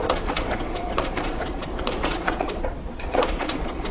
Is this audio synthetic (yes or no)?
yes